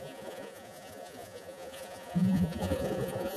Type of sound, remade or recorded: remade